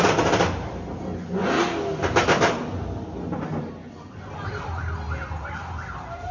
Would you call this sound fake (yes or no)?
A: no